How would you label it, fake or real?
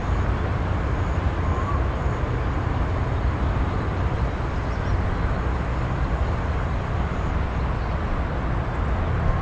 real